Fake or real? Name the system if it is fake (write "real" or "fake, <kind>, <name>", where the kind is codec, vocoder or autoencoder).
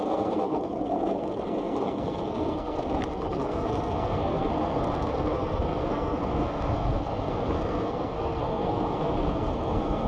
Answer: fake, codec, SNAC